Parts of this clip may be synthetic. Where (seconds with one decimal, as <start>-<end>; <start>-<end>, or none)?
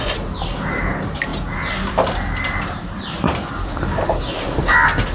0.0-1.3; 2.5-5.1